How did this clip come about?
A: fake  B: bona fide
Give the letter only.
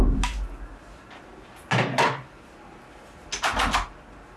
B